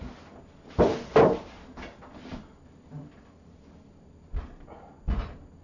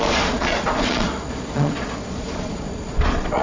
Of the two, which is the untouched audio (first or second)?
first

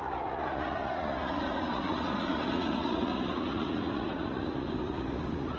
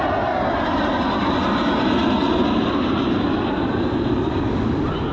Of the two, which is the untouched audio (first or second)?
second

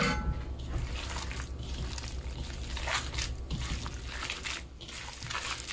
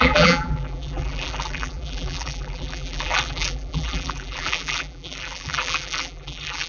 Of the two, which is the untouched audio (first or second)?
first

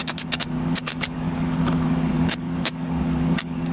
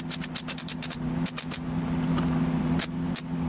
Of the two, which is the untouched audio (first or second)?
second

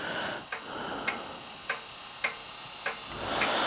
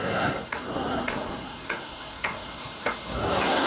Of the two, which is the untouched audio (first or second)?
first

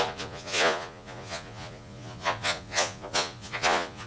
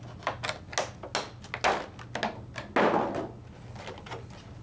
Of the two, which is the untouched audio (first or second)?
second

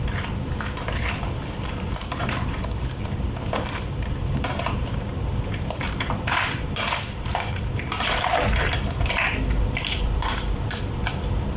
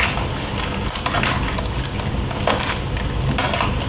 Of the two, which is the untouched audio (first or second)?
second